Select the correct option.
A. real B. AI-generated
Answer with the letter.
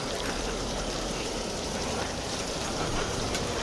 B